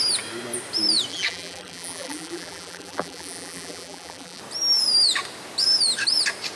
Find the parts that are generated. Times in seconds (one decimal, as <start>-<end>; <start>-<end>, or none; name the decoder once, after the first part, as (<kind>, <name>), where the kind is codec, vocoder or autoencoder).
1.1-4.4 (vocoder, BigVGAN v2)